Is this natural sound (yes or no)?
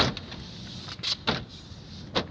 yes